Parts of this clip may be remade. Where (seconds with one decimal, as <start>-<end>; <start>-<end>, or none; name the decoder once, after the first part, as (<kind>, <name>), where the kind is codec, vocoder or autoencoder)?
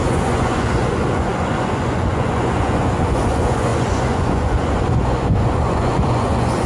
0.0-6.7 (vocoder, Vocos)